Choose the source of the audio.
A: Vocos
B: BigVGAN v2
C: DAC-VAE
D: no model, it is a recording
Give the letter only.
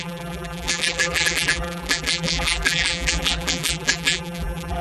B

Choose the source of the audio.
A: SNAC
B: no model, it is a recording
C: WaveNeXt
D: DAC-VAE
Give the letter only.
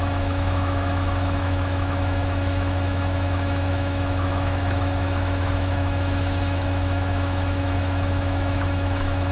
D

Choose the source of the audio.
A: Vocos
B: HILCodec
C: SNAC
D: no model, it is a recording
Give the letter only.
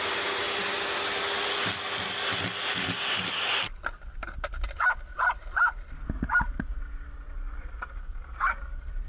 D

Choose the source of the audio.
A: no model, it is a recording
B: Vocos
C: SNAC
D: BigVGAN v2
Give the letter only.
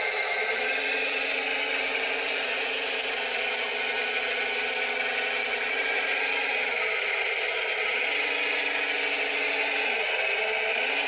A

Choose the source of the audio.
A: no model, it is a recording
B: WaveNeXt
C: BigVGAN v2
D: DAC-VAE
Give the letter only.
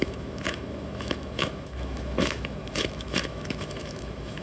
D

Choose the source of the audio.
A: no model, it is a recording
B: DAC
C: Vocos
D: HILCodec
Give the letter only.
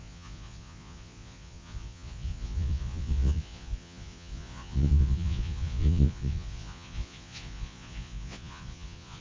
C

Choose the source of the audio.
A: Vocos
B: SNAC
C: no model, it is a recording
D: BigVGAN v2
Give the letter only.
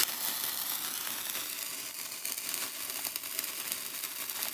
C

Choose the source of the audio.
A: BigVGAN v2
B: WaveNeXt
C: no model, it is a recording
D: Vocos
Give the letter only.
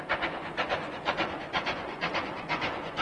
D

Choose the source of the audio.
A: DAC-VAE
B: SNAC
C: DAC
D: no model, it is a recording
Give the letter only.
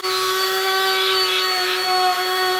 A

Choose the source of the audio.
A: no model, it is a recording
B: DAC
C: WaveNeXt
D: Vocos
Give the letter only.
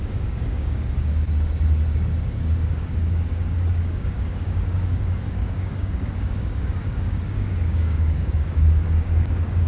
B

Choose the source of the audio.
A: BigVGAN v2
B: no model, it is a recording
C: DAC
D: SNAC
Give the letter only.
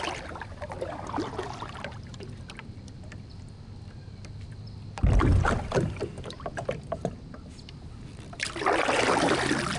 A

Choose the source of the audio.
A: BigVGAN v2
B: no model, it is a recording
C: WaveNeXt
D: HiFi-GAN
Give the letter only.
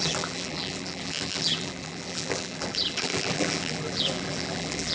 A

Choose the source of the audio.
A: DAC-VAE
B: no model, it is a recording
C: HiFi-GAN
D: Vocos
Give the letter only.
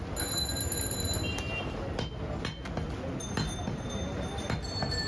B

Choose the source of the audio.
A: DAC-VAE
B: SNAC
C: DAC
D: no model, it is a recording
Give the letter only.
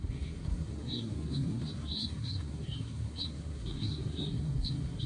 B